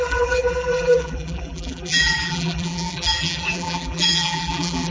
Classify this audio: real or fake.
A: fake